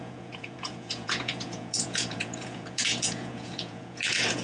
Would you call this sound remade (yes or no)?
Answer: yes